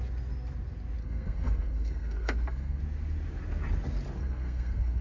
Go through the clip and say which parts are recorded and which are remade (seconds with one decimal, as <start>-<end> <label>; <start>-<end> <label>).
0.0-1.0 recorded; 1.0-2.8 remade; 2.8-4.2 recorded; 4.2-5.0 remade